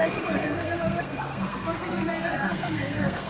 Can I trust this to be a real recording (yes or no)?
no